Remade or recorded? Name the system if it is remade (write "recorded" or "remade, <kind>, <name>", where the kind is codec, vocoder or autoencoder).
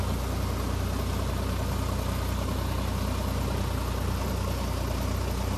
recorded